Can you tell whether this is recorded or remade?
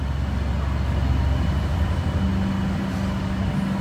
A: recorded